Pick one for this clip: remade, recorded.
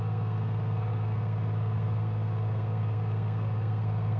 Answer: remade